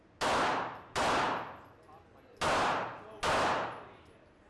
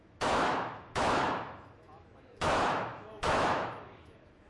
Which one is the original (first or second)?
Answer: first